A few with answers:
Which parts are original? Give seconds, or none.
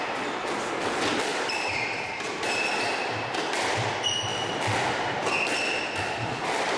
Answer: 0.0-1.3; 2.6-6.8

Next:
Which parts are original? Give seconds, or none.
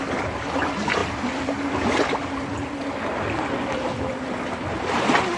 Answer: 0.0-5.4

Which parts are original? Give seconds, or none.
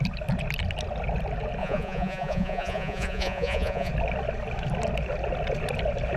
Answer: 0.0-1.6; 3.9-6.2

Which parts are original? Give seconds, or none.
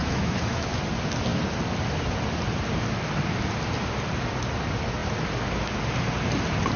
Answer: 0.8-6.8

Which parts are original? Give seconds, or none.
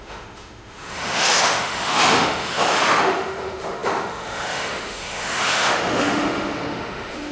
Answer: none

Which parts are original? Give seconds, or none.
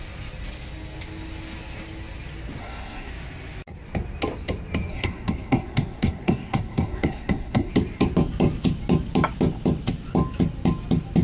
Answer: 0.0-2.6; 3.1-4.9; 7.7-11.2